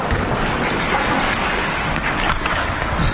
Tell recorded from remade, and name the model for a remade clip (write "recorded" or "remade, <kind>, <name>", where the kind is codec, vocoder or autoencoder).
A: remade, codec, DAC